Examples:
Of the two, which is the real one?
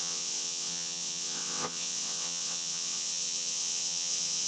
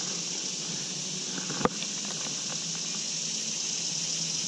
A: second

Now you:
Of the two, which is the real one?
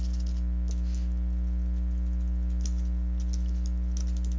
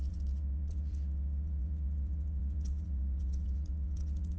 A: first